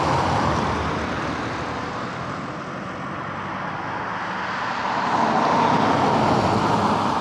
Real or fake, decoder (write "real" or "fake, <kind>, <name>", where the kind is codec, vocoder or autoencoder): real